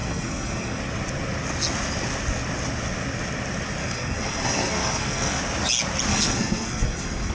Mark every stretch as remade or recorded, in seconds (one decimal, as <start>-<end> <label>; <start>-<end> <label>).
0.0-0.8 remade; 0.8-3.8 recorded; 3.8-5.4 remade; 5.4-6.1 recorded; 6.1-7.3 remade